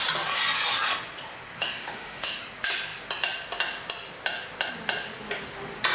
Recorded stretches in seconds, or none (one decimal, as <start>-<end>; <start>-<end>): 0.0-1.6; 2.4-5.9

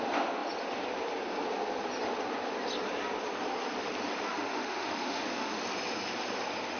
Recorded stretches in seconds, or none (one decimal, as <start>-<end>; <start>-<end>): 0.0-4.3; 5.6-6.8

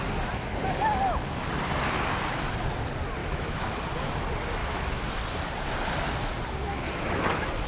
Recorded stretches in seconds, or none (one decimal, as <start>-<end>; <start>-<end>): 0.0-3.2; 3.8-4.6; 5.1-6.7; 7.3-7.7

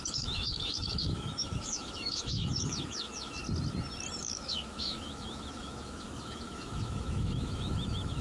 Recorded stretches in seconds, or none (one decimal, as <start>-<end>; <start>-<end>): 3.4-4.2

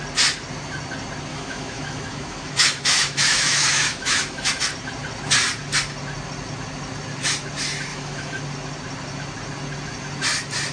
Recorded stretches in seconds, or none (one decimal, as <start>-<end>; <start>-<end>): 0.0-1.3; 4.6-7.9; 8.4-10.7

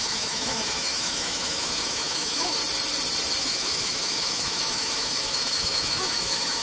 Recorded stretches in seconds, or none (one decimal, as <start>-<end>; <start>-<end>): 2.6-3.4

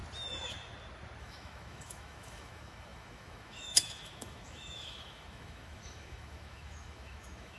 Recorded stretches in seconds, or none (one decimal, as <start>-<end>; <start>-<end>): 0.0-1.2